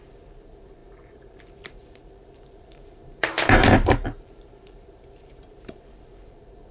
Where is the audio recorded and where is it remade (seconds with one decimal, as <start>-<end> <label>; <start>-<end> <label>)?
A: 0.0-6.7 remade